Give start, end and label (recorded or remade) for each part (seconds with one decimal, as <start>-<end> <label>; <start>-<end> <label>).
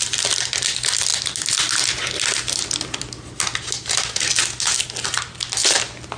0.0-6.2 recorded